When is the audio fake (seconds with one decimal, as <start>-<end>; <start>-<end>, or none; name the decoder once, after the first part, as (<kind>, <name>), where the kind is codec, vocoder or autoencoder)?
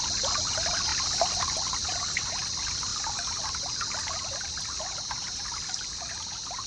none